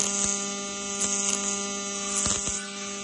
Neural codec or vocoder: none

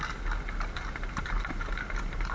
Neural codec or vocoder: none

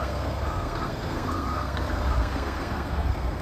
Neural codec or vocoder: codec, SNAC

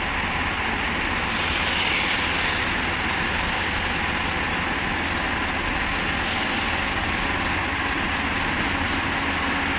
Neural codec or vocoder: none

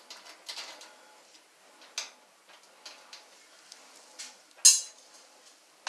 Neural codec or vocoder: none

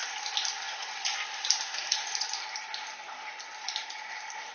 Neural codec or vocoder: none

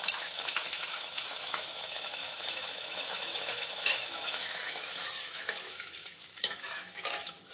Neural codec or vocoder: autoencoder, DAC-VAE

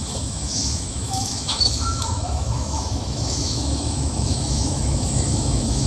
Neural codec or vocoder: autoencoder, DAC-VAE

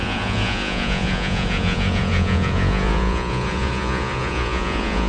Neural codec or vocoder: vocoder, Vocos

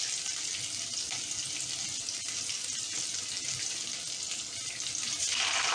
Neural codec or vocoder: none